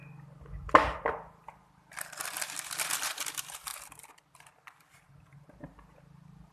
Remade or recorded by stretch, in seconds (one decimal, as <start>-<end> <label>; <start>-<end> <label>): 0.0-3.3 recorded; 3.3-3.7 remade; 3.7-5.5 recorded; 5.5-6.5 remade